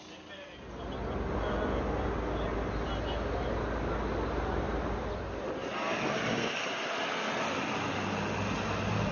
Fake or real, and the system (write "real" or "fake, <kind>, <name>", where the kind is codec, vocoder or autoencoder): real